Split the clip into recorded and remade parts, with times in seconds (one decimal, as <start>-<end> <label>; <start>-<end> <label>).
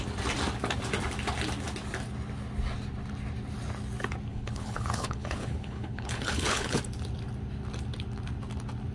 0.0-4.3 recorded; 4.3-6.8 remade; 6.8-8.9 recorded